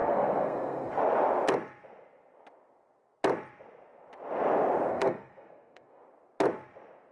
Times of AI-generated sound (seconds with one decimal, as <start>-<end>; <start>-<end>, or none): 0.0-0.9; 4.9-6.0